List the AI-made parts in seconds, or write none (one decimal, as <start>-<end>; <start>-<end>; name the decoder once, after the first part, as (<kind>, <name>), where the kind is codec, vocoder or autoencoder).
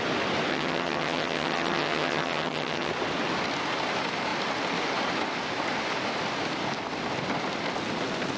0.5-2.9 (vocoder, HiFi-GAN)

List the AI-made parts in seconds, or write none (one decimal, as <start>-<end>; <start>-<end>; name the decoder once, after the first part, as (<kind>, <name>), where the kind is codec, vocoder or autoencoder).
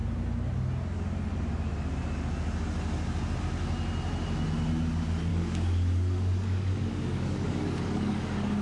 5.3-8.6 (codec, DAC)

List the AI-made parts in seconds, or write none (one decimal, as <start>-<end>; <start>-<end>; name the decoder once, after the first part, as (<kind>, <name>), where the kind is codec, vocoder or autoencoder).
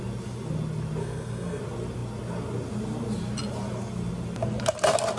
1.0-1.6 (codec, SNAC)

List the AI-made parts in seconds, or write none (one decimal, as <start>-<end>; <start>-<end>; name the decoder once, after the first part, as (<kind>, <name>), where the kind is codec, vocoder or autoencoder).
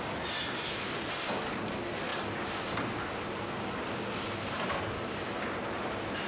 none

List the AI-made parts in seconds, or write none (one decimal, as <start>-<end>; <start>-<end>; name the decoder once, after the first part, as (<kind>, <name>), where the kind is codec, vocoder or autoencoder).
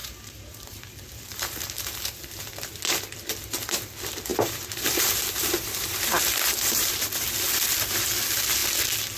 0.0-2.2 (vocoder, BigVGAN v2); 4.3-6.9